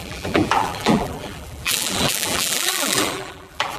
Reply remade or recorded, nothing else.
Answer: remade